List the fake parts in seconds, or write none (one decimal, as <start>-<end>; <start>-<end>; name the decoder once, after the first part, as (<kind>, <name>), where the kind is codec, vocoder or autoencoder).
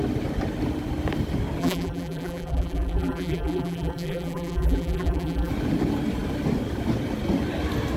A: 1.6-5.5 (vocoder, BigVGAN v2)